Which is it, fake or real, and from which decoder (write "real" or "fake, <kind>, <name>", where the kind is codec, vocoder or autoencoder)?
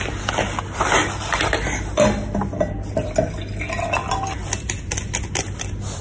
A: real